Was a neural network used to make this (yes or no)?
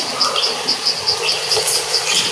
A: no